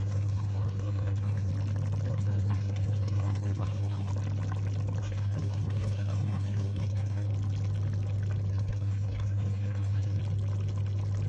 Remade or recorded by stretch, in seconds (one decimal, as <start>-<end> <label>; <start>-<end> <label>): 0.0-1.5 remade; 1.5-2.1 recorded; 2.1-4.1 remade; 4.1-5.0 recorded; 5.0-7.3 remade; 7.3-8.5 recorded; 8.5-10.2 remade; 10.2-11.3 recorded